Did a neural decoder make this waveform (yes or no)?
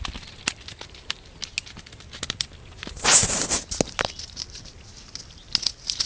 no